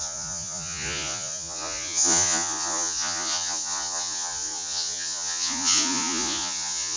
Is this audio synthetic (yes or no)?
yes